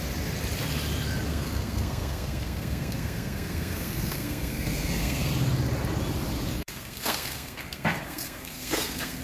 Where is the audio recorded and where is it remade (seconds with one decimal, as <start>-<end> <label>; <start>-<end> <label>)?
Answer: 0.0-1.3 recorded; 1.3-5.3 remade; 5.3-6.5 recorded; 6.5-9.2 remade